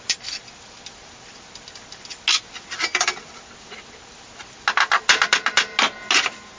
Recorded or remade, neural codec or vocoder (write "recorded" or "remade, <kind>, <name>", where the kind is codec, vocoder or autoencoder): recorded